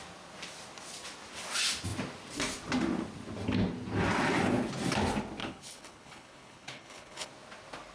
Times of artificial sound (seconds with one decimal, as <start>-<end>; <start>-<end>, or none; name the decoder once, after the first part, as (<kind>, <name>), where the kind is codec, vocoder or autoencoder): 5.4-7.3 (codec, HILCodec)